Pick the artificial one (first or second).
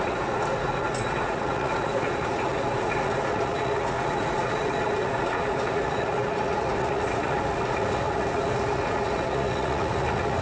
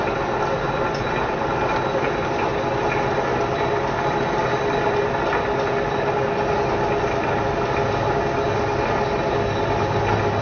first